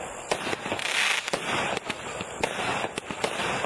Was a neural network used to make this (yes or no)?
no